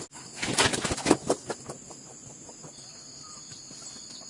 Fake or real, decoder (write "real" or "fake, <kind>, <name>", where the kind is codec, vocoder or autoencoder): real